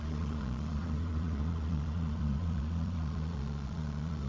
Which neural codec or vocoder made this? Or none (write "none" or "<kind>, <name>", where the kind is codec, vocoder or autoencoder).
vocoder, Vocos